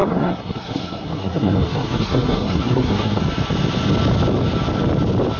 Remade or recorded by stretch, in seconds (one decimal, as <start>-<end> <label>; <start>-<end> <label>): 0.0-3.2 remade; 3.2-5.4 recorded